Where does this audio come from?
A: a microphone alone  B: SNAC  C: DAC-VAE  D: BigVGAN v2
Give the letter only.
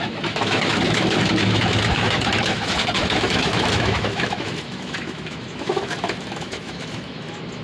C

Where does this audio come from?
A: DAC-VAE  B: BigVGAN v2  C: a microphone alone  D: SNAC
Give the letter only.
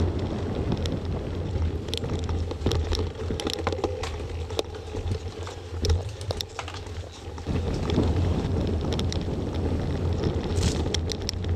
C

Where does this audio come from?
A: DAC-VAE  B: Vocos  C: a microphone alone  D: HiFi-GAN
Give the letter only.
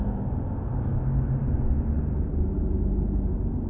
C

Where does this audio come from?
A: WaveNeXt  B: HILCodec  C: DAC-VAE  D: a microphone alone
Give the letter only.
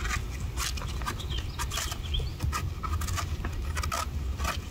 D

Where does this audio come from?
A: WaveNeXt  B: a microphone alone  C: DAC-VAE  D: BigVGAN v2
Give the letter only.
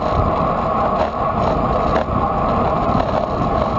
B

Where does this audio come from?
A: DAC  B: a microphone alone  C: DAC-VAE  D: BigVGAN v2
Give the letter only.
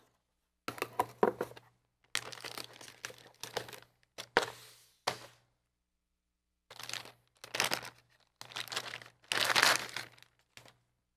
B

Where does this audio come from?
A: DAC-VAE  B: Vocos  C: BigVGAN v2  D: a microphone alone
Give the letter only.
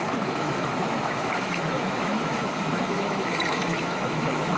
A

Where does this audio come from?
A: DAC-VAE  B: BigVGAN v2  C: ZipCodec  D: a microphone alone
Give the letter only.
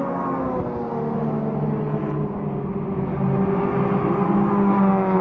D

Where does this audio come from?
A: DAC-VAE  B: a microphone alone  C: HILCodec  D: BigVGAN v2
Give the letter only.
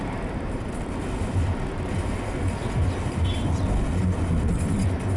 B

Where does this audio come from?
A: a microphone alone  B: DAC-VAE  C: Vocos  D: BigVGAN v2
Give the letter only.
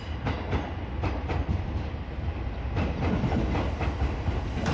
A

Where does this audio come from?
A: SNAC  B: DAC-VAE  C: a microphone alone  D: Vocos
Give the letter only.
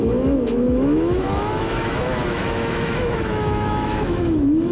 B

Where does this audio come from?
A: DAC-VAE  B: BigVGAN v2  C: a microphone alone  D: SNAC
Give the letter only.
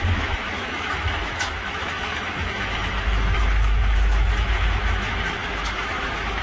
A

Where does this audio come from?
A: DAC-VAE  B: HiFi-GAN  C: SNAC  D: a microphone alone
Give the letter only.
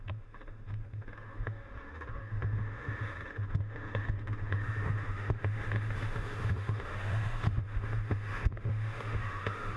A